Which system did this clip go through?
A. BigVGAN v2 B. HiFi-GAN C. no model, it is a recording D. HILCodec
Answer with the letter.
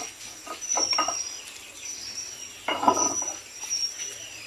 C